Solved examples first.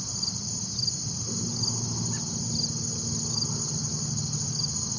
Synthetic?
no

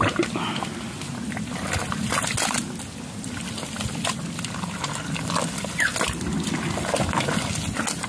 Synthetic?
no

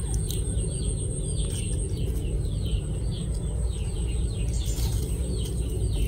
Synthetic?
no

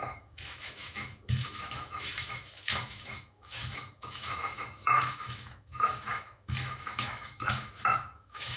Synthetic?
yes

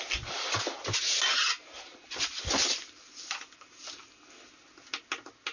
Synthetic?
no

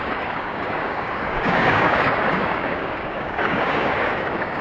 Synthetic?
yes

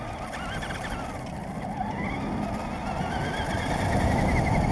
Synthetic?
no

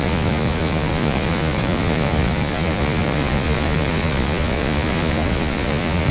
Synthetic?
yes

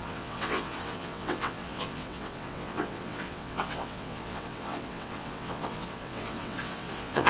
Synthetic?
yes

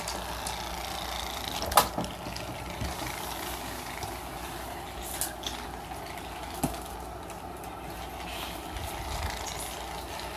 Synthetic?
no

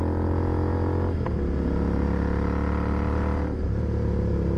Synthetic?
no